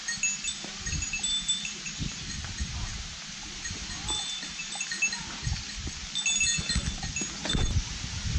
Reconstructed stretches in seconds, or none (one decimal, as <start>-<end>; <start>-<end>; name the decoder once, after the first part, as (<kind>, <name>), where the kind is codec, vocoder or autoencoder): 0.8-6.0 (vocoder, BigVGAN v2); 7.5-8.4